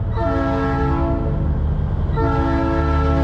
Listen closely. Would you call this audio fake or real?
real